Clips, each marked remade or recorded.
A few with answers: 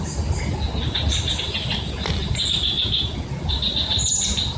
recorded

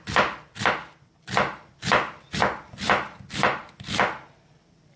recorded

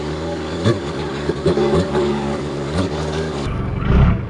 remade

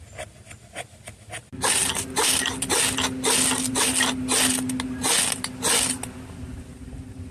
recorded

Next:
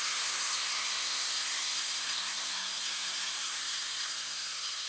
remade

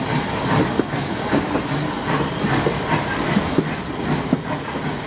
recorded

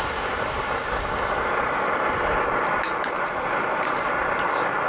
recorded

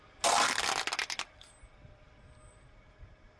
recorded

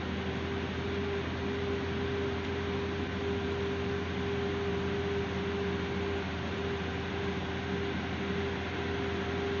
recorded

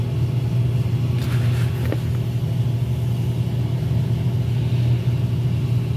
recorded